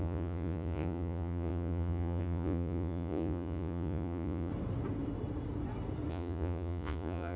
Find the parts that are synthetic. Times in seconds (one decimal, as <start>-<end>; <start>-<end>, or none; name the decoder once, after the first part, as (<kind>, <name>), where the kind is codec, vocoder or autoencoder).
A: 0.0-4.5 (vocoder, Vocos); 6.1-7.4